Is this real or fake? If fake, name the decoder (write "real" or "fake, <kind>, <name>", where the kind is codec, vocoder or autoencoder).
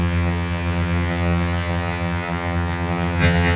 fake, vocoder, HiFi-GAN